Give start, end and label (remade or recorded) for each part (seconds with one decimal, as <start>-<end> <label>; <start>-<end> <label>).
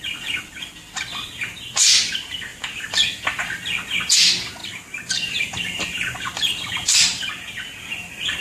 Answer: 0.0-2.5 recorded; 2.5-3.2 remade; 3.2-4.6 recorded; 4.6-7.3 remade; 7.3-8.4 recorded